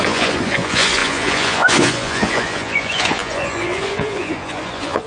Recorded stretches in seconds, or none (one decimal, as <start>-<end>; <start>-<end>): none